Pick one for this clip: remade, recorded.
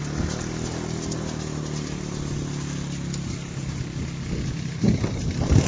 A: recorded